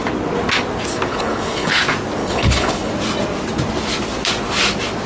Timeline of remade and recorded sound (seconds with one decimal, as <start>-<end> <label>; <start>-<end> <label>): 0.0-1.1 recorded; 1.1-1.8 remade; 1.8-2.2 recorded; 2.2-2.9 remade; 2.9-5.1 recorded